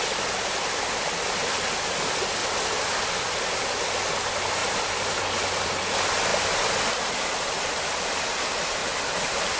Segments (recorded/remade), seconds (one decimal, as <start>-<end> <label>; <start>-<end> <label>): 0.0-4.6 recorded; 4.6-5.2 remade; 5.2-6.3 recorded; 6.3-7.7 remade; 7.7-9.6 recorded